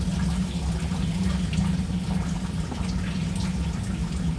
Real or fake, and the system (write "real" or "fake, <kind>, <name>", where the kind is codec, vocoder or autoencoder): real